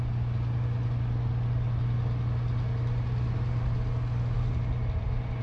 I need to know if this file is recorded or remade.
recorded